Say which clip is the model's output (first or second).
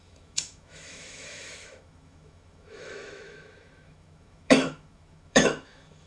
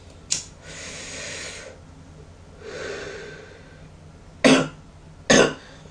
first